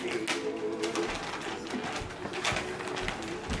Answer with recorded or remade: recorded